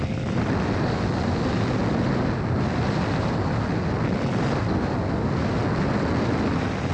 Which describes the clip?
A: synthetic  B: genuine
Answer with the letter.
B